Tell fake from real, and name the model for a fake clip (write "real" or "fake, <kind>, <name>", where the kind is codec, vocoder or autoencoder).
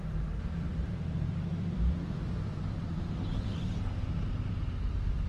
fake, vocoder, BigVGAN v2